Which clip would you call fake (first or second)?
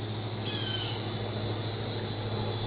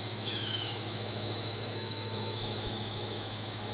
second